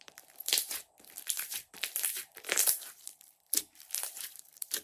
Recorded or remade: remade